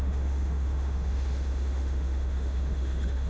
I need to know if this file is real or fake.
fake